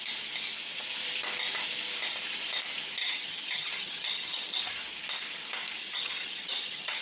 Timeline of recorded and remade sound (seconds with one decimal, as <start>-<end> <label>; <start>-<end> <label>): 0.0-3.0 recorded; 3.0-4.6 remade; 4.6-5.8 recorded; 5.8-7.0 remade